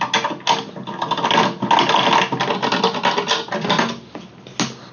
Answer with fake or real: real